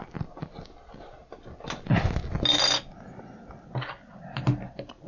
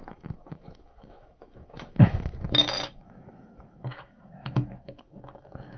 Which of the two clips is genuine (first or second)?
first